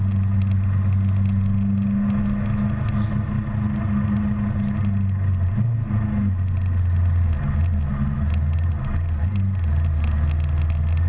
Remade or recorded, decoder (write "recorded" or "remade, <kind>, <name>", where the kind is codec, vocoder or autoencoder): recorded